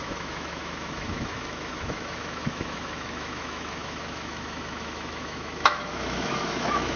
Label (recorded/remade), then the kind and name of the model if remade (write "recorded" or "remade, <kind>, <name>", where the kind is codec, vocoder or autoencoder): remade, autoencoder, DAC-VAE